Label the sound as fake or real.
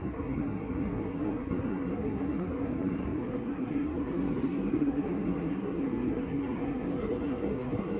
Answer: fake